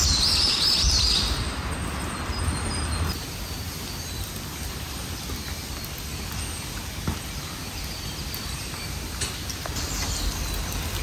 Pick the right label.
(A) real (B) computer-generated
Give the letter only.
A